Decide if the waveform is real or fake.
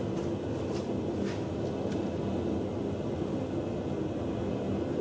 real